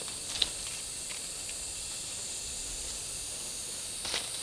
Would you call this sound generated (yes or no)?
no